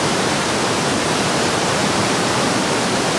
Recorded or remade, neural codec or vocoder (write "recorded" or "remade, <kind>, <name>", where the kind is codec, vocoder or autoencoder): remade, vocoder, BigVGAN v2